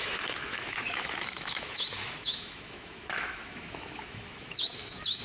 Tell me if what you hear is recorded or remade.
remade